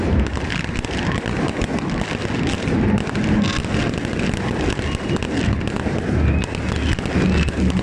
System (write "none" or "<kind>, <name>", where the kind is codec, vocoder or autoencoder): none